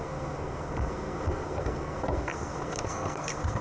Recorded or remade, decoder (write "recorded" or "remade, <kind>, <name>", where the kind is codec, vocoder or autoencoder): remade, codec, SNAC